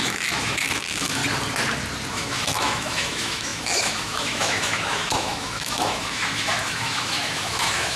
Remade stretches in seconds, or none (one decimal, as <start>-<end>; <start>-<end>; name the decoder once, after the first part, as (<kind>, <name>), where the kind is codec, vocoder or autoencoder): 0.0-1.2 (autoencoder, DAC-VAE); 2.1-8.0